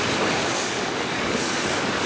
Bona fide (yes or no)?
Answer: no